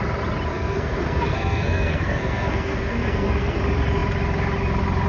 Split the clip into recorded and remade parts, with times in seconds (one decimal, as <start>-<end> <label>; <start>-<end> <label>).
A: 0.0-0.5 recorded; 0.5-3.6 remade; 3.6-5.1 recorded